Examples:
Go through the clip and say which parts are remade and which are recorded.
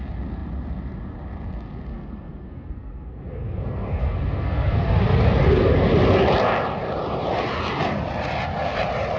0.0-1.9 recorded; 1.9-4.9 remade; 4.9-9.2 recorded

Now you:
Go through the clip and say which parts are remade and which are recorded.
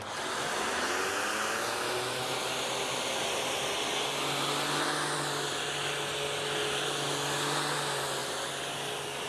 0.0-9.3 recorded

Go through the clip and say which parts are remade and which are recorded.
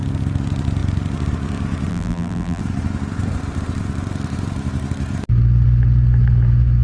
0.0-1.9 recorded; 1.9-2.6 remade; 2.6-6.8 recorded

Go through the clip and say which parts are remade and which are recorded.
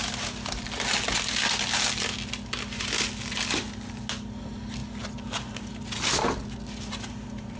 0.0-7.6 recorded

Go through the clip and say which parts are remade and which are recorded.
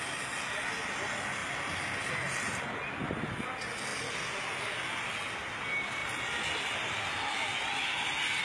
0.0-8.4 recorded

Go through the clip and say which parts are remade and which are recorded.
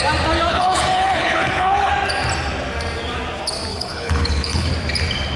0.0-0.5 recorded; 0.5-1.9 remade; 1.9-3.7 recorded; 3.7-4.7 remade; 4.7-5.4 recorded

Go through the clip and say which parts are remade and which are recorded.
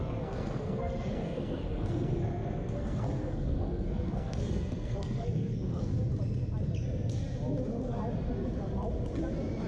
0.0-5.9 remade; 5.9-9.7 recorded